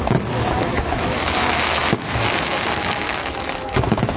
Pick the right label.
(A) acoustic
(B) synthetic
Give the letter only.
B